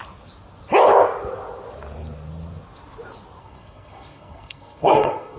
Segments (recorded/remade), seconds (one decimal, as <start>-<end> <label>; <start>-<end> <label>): 0.0-3.4 recorded; 3.4-5.4 remade